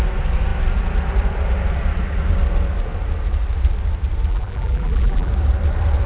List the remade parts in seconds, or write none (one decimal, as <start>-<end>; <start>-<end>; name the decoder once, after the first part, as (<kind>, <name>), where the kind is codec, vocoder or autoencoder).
4.3-5.3 (vocoder, BigVGAN v2)